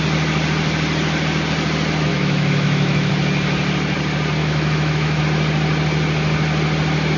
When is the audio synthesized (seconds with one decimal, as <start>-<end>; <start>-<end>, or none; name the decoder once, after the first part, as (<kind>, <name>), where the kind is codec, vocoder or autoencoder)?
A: 2.1-3.1 (autoencoder, DAC-VAE); 4.4-5.2